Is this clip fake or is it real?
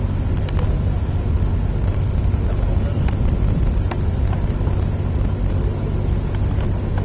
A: real